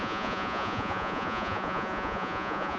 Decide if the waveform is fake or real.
fake